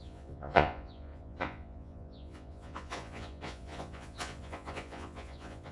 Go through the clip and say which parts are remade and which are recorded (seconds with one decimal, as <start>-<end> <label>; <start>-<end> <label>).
0.0-5.7 remade